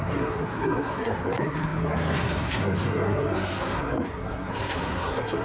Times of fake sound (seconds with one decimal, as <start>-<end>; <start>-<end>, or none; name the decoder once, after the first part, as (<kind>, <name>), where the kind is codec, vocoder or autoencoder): 0.0-5.4 (codec, SNAC)